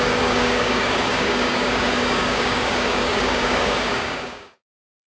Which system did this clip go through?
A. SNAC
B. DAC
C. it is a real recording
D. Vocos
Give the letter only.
B